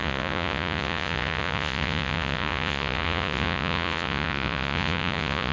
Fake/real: fake